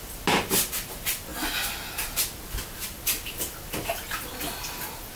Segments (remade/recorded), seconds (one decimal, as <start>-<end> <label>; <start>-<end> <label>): 0.0-5.2 recorded